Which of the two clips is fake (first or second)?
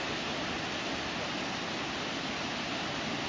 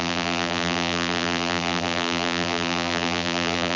second